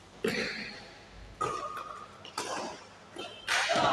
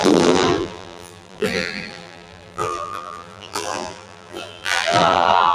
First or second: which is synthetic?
second